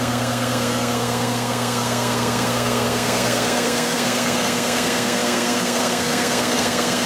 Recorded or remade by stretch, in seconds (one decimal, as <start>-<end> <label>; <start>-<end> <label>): 0.0-7.0 remade